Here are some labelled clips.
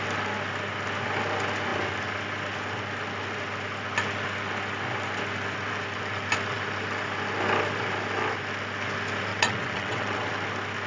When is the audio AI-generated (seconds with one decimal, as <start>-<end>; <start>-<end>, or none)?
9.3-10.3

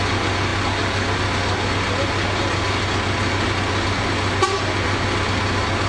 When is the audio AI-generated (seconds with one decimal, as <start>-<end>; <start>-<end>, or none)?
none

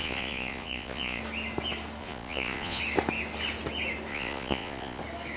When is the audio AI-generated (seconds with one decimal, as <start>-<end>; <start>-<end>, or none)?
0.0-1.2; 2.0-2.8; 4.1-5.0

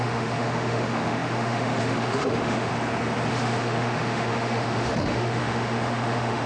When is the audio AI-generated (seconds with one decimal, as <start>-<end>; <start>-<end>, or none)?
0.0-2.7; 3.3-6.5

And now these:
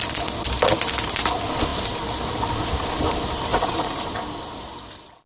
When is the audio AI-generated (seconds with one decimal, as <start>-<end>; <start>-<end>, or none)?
3.5-4.0